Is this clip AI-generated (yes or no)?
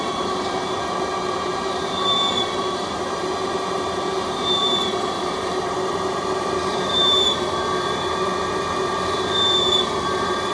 yes